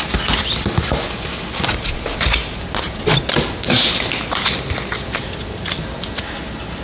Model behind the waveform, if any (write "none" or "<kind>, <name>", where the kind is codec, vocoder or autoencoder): none